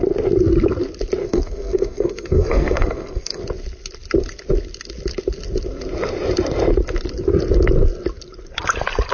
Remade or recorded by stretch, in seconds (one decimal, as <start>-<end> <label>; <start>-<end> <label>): 0.0-1.2 recorded; 1.2-3.4 remade; 3.4-9.1 recorded